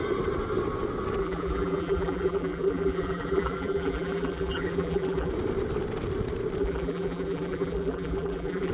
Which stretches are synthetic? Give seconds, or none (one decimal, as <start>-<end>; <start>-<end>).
1.2-5.3; 6.6-8.7